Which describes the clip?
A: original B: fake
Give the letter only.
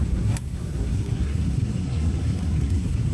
B